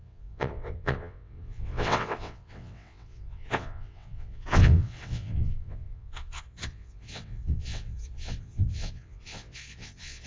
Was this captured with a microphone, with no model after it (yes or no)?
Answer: no